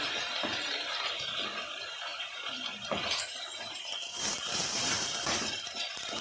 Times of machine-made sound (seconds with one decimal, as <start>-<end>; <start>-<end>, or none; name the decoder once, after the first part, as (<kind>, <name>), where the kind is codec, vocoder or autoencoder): 0.0-6.2 (vocoder, BigVGAN v2)